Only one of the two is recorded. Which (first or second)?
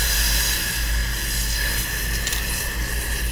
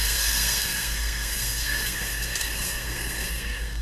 first